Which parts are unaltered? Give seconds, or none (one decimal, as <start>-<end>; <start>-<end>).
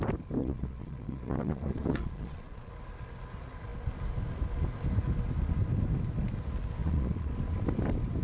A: 0.0-0.4; 2.7-6.8; 7.3-8.2